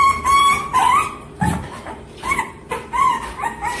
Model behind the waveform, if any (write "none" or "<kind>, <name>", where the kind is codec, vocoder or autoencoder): vocoder, BigVGAN v2